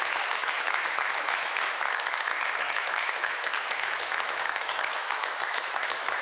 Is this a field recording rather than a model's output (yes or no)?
no